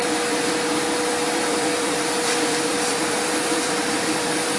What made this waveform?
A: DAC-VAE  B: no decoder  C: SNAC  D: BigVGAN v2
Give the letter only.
D